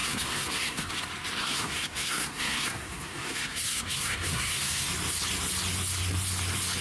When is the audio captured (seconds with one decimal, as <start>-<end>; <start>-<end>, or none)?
0.9-1.4; 4.9-6.8